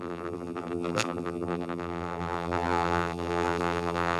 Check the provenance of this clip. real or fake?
fake